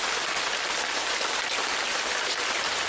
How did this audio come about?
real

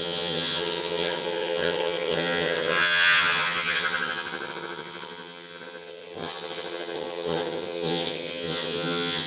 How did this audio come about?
fake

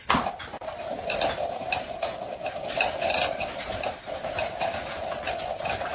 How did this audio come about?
real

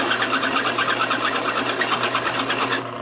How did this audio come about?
real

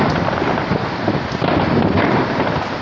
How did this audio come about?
real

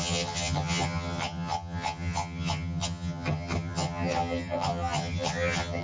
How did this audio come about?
fake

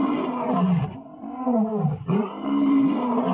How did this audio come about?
real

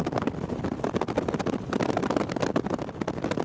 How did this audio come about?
real